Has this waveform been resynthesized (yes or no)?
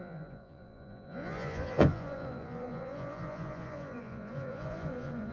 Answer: yes